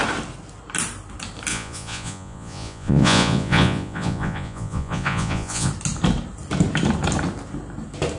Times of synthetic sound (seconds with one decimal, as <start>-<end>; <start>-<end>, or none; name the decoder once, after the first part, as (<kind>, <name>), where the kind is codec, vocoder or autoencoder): 1.5-5.7 (vocoder, Vocos)